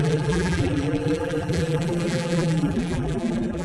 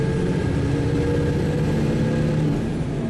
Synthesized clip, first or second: first